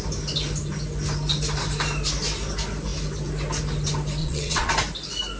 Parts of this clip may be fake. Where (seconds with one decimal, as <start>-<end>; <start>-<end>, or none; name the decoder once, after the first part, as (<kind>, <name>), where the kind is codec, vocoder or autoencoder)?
4.2-4.7 (vocoder, WaveNeXt)